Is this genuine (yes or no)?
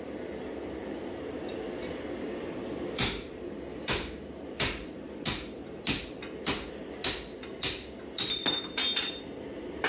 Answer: yes